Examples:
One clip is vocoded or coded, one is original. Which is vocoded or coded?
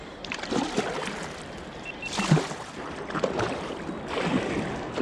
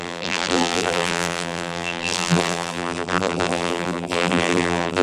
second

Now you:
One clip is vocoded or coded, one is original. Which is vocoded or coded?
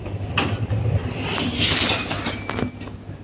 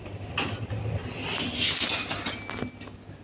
first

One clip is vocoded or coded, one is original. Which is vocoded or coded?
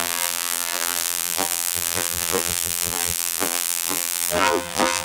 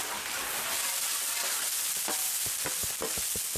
first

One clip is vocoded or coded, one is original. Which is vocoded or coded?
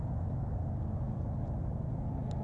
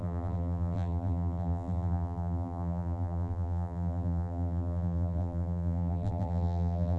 second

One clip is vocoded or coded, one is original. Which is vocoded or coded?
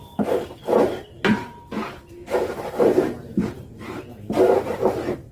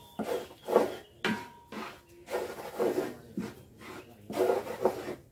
first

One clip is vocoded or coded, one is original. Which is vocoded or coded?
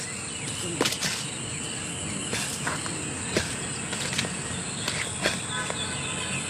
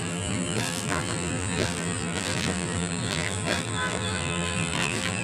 second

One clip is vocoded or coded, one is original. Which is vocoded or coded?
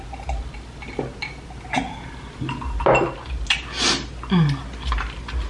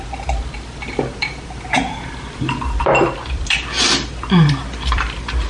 second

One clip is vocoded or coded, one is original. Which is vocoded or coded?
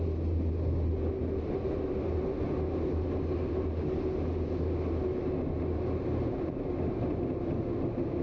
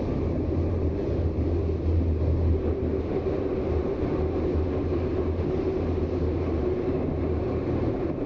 second